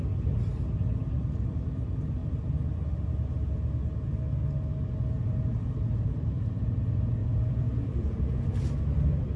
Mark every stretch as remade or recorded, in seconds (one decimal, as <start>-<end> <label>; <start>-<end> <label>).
0.0-7.2 recorded; 7.2-8.4 remade; 8.4-9.4 recorded

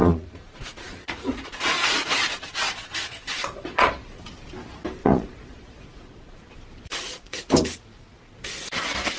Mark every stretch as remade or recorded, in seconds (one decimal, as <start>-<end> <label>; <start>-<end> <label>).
0.0-4.2 remade; 4.2-5.0 recorded; 5.0-6.5 remade; 6.5-6.9 recorded; 6.9-7.4 remade; 7.4-9.2 recorded